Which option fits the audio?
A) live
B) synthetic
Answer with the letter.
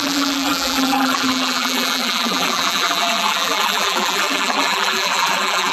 B